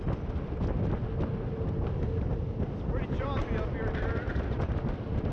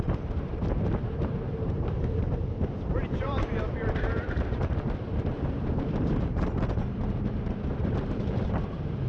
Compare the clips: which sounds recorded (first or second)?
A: first